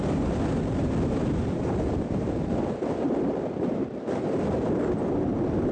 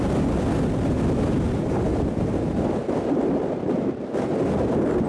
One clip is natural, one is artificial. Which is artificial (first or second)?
first